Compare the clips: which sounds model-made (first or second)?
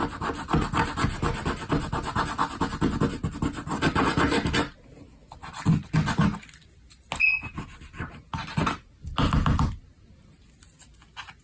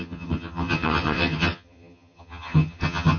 second